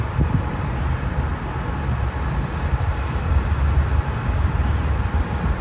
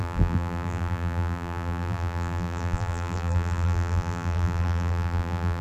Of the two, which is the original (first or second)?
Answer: first